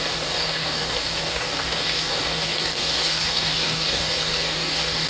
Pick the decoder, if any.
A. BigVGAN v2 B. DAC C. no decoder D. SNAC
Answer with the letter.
B